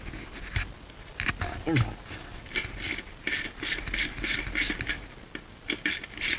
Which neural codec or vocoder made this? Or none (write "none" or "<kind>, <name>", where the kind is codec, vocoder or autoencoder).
none